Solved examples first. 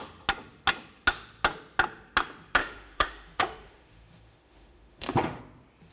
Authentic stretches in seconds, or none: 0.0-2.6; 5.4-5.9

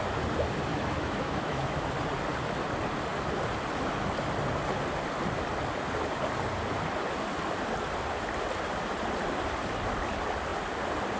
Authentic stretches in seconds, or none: 0.0-0.7; 1.9-11.2

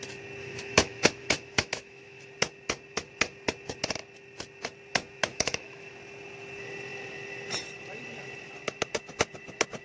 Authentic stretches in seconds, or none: 0.0-0.4; 2.3-5.3; 5.9-9.8

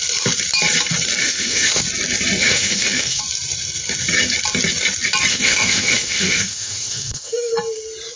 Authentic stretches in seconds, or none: 0.0-1.2; 1.8-2.4; 3.2-5.3; 7.5-8.2

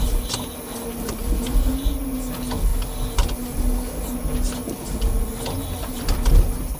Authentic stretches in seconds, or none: 0.0-6.8

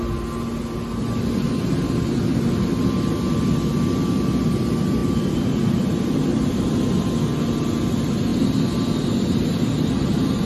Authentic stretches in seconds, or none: 0.0-10.5

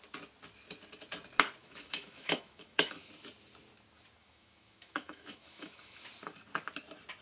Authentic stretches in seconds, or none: 0.0-1.6; 3.1-4.2; 6.0-7.2